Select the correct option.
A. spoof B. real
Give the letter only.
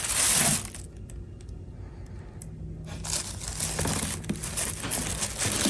B